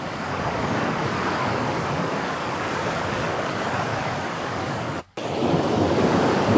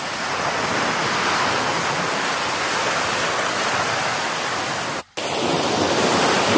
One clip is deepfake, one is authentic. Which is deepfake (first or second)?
first